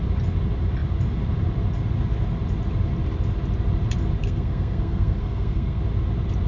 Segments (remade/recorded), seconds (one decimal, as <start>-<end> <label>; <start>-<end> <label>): 0.0-4.2 recorded; 4.2-5.8 remade; 5.8-6.5 recorded